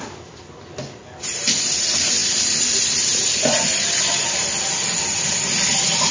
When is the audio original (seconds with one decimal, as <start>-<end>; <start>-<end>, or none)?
0.0-6.1